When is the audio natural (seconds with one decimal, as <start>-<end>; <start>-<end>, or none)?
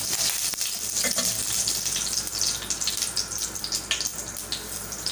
0.0-5.1